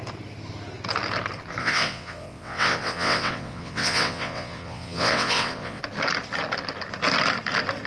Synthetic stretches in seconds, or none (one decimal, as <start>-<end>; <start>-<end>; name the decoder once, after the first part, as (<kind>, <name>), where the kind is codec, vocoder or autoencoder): 1.6-5.8 (vocoder, WaveNeXt)